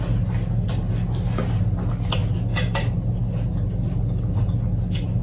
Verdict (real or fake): real